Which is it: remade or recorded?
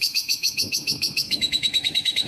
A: remade